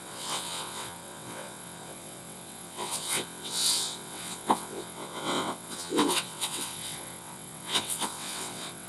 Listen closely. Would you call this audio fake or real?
fake